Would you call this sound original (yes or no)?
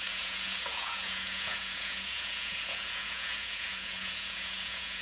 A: no